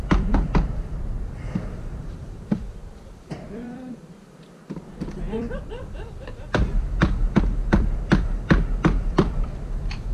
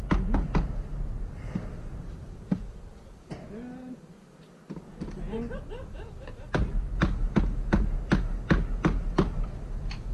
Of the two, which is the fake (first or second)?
first